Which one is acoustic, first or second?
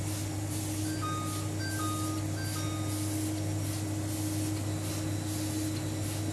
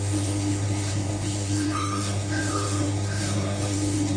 first